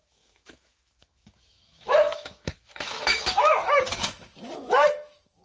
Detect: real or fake fake